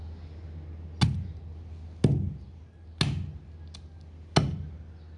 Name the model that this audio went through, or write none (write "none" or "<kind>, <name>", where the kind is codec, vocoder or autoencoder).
none